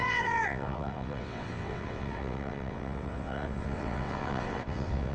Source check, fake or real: fake